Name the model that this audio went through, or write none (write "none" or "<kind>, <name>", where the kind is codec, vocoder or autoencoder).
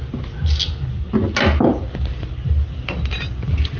none